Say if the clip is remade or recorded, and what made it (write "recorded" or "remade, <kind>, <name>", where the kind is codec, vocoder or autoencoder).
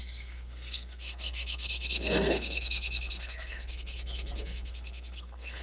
remade, codec, SNAC